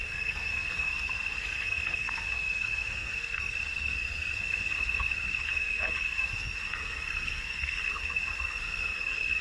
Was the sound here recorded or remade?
remade